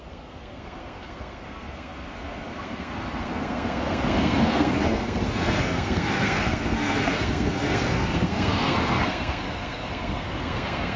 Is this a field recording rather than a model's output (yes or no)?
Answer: no